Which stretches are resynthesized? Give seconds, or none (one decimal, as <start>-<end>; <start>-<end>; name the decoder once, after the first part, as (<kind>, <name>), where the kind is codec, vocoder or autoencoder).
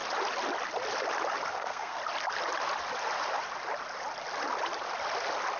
1.5-2.0 (codec, SNAC)